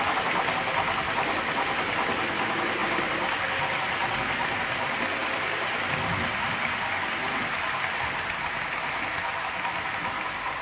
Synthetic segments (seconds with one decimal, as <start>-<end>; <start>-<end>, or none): none

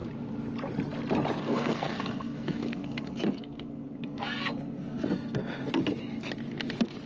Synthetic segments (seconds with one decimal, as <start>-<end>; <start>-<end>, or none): 1.4-5.7